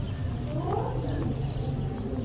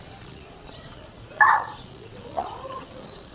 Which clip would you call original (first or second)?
first